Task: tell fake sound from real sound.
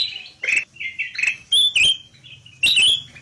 real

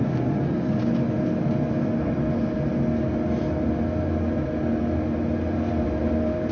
real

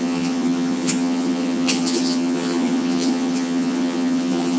fake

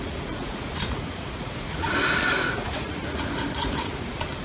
fake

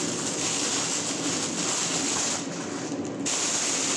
real